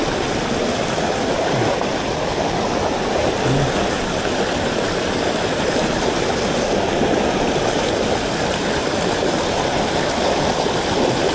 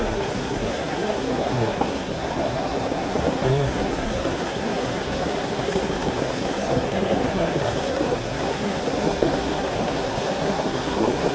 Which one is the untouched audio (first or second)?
first